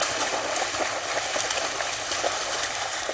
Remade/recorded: recorded